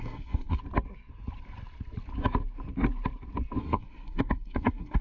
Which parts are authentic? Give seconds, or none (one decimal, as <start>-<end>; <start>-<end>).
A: 0.6-3.6